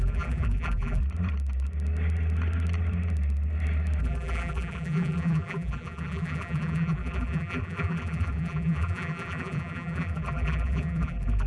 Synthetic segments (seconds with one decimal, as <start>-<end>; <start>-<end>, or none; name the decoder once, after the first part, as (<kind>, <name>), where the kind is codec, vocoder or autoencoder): 0.0-1.0 (vocoder, BigVGAN v2); 4.0-11.5